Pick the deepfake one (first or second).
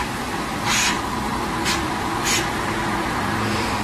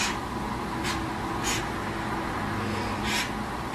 first